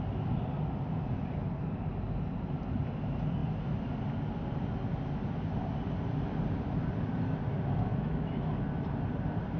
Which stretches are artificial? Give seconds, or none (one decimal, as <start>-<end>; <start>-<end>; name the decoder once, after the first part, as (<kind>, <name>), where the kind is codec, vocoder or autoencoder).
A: 7.9-8.5 (autoencoder, DAC-VAE)